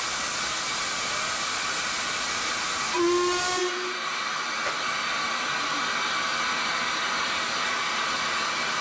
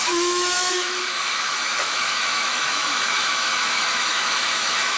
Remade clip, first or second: second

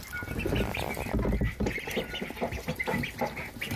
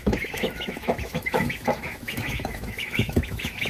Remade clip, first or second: second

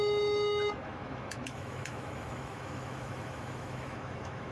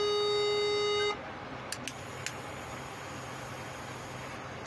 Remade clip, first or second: first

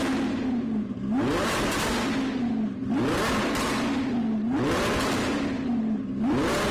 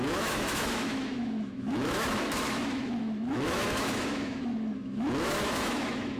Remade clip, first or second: second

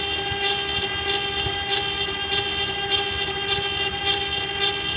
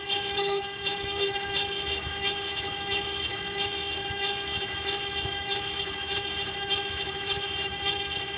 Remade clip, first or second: second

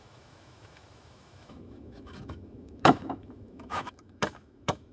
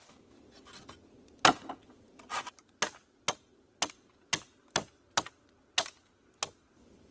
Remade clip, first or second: first